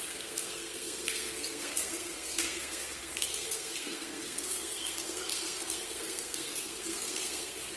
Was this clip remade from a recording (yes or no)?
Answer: yes